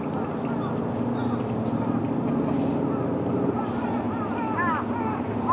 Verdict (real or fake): real